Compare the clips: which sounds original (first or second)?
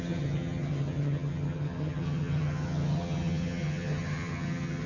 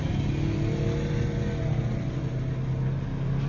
second